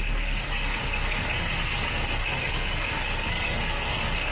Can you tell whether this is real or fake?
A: fake